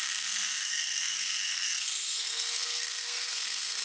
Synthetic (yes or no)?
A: yes